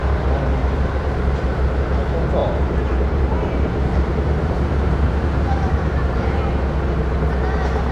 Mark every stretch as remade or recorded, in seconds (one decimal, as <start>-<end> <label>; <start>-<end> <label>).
0.0-1.5 remade; 1.5-2.4 recorded; 2.4-6.4 remade; 6.4-7.9 recorded